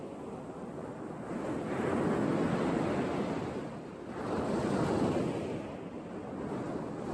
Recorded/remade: recorded